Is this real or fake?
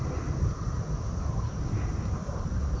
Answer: real